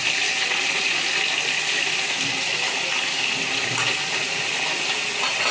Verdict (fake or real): real